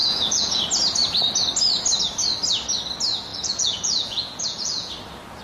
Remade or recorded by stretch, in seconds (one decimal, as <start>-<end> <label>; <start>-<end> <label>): 0.0-0.6 remade; 0.6-3.3 recorded; 3.3-4.9 remade; 4.9-5.4 recorded

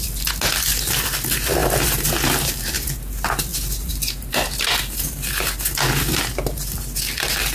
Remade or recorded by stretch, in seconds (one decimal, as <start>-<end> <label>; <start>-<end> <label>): 0.0-7.5 recorded

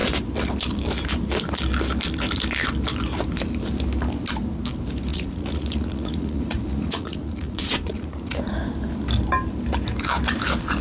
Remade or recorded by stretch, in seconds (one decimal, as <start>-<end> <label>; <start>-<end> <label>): 0.0-5.1 recorded; 5.1-8.5 remade; 8.5-10.8 recorded